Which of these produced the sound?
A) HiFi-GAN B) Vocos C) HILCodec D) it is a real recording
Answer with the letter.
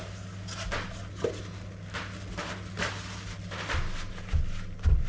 D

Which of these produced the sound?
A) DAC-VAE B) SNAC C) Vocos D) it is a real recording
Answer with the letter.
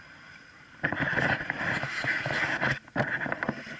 D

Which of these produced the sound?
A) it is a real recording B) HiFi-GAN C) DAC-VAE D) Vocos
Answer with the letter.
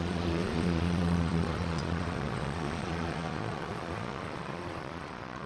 D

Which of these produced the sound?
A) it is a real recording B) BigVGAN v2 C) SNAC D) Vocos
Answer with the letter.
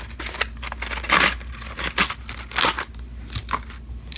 A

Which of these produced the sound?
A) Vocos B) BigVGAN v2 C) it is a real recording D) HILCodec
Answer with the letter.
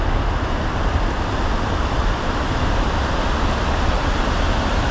C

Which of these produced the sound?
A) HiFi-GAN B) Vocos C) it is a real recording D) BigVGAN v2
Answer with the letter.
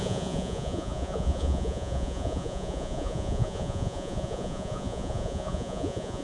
B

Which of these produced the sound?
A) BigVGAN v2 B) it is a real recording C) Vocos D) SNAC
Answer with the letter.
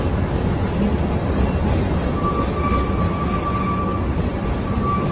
B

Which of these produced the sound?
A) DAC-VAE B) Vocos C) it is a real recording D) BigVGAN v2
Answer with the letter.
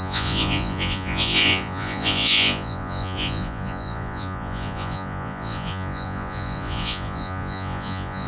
B